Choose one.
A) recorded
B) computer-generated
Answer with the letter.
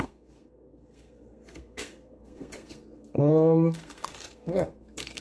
B